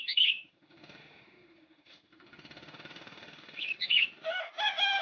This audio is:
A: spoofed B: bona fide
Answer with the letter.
A